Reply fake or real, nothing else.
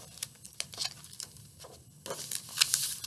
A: real